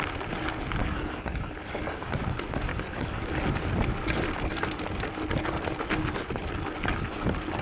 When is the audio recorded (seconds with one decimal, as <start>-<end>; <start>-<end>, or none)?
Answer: 0.0-0.8; 2.1-2.7; 3.3-7.6